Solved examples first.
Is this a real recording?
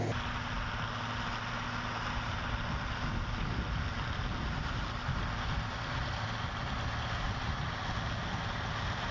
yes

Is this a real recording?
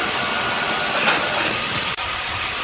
yes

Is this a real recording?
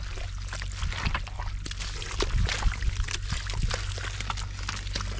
yes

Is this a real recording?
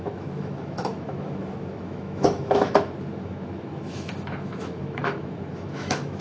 no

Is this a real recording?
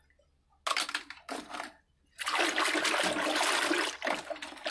yes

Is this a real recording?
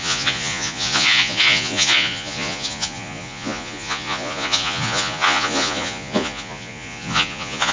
no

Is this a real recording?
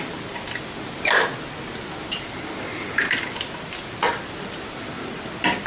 yes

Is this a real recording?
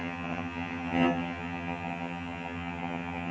no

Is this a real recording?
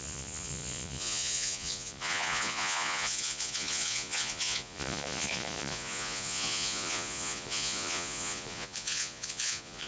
no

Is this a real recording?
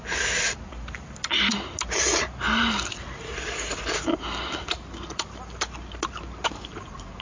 yes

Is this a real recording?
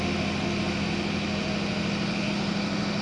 yes